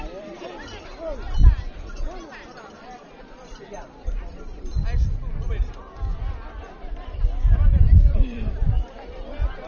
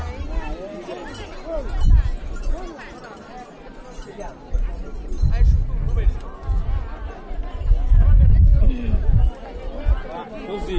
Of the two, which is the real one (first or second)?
second